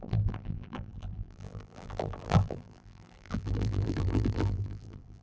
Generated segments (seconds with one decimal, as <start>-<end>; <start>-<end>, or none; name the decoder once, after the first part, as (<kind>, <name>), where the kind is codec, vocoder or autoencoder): 0.0-5.2 (vocoder, BigVGAN v2)